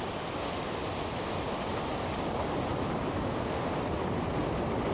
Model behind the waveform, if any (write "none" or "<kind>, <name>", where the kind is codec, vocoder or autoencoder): none